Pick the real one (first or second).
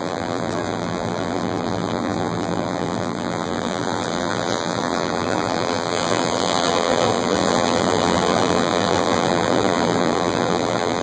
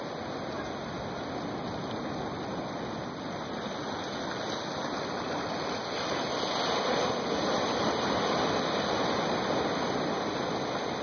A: second